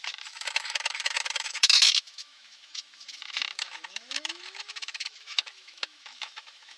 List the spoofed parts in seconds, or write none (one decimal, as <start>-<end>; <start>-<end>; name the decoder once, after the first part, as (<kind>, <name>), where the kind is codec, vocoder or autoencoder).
0.0-6.8 (autoencoder, DAC-VAE)